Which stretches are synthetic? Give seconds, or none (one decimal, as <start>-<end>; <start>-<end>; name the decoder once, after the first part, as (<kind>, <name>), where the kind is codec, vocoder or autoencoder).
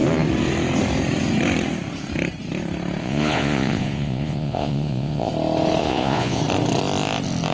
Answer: 3.0-5.3 (vocoder, Vocos); 5.8-6.4